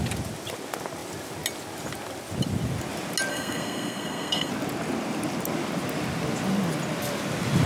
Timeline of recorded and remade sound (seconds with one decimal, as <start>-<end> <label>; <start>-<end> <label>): 0.0-3.3 recorded; 3.3-4.5 remade; 4.5-7.7 recorded